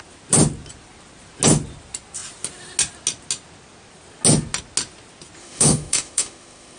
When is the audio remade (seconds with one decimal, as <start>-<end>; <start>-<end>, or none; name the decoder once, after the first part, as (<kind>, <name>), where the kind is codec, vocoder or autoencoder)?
5.4-6.8 (autoencoder, DAC-VAE)